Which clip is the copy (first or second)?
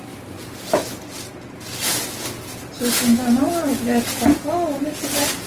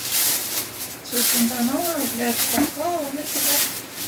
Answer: second